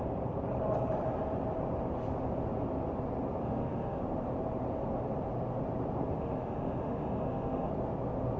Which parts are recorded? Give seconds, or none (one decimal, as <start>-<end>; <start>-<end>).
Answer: 0.0-3.4; 4.0-6.2; 7.7-8.4